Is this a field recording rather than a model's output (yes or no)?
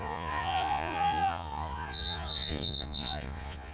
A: no